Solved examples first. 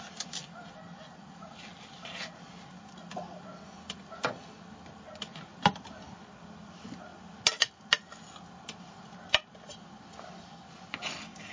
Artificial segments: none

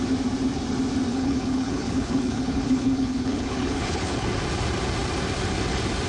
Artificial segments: 1.1-4.3 (codec, HILCodec)